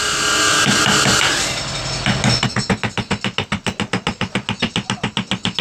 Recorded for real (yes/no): yes